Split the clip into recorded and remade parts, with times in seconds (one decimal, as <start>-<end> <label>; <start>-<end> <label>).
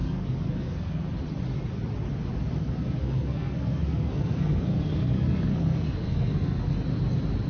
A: 0.0-1.0 remade; 1.0-2.6 recorded; 2.6-6.7 remade; 6.7-7.5 recorded